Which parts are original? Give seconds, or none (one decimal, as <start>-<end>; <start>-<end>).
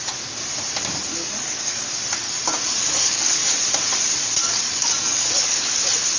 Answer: 0.0-1.1; 1.9-2.8; 3.5-4.4; 5.8-6.2